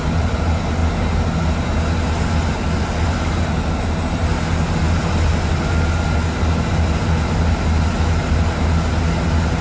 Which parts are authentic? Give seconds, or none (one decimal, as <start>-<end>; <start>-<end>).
0.0-9.6